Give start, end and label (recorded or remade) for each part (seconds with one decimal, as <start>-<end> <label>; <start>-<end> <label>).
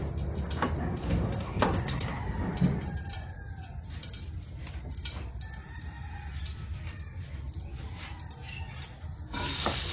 0.0-0.8 recorded; 0.8-2.2 remade; 2.2-9.9 recorded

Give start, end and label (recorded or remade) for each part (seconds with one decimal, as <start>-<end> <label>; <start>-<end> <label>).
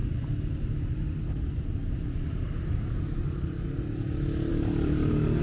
0.0-4.5 recorded; 4.5-5.4 remade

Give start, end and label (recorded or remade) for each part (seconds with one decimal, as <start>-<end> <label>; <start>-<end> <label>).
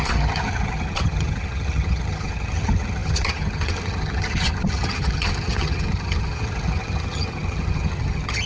0.0-8.5 remade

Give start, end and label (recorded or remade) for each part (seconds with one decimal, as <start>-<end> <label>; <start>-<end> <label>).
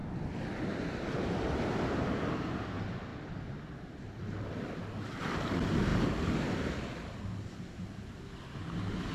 0.0-9.1 recorded